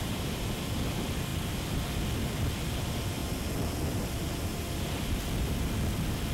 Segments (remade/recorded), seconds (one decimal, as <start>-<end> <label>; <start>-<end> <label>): 0.0-3.2 remade; 3.2-3.9 recorded; 3.9-6.3 remade